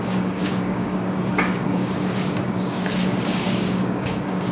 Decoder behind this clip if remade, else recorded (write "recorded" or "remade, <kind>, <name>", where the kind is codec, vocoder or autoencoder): remade, codec, DAC